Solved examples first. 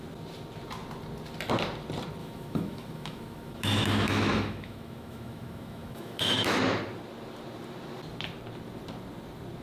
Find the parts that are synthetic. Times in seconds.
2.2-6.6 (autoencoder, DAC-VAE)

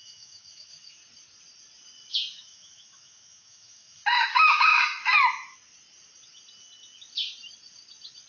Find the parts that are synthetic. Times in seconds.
0.0-1.0 (autoencoder, DAC-VAE); 2.3-5.0